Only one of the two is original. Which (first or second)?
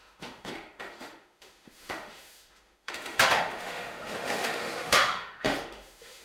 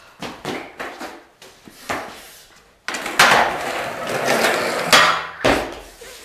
second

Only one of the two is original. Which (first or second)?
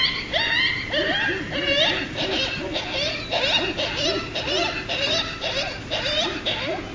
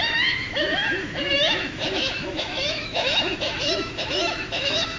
first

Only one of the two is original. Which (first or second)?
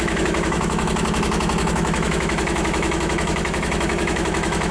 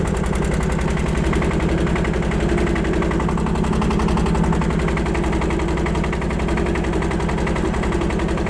second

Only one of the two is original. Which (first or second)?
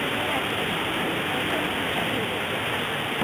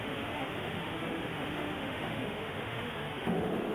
first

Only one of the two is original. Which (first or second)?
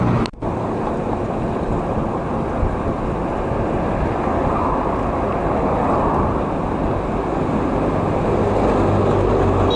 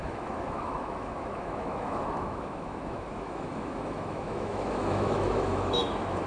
first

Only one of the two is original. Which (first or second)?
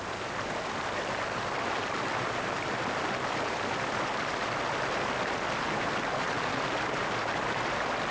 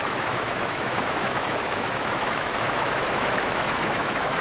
first